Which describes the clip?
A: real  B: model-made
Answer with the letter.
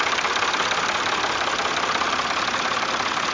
A